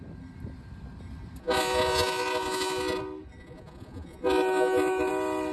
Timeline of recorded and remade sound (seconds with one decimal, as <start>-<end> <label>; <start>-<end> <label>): 0.0-1.4 recorded; 1.4-3.0 remade; 3.0-3.4 recorded; 3.4-5.1 remade; 5.1-5.5 recorded